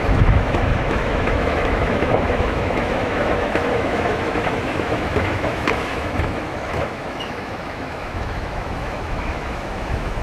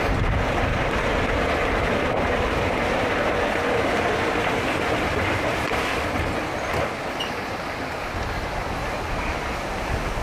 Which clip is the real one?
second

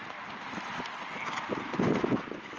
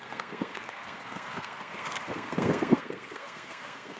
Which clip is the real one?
first